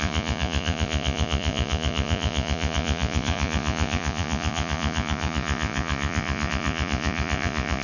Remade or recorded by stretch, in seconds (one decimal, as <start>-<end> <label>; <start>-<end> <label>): 0.0-7.8 remade